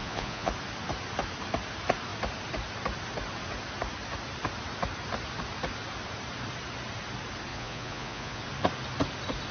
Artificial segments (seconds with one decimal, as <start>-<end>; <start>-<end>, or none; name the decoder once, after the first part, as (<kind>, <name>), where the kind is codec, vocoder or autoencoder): 0.0-0.5 (vocoder, Vocos); 7.5-8.4